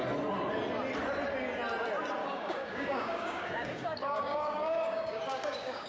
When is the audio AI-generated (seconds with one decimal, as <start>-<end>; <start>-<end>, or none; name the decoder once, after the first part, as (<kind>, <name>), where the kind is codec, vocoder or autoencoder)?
2.2-5.9 (codec, DAC)